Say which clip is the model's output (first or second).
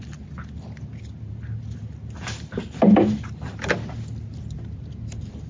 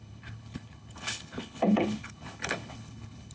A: second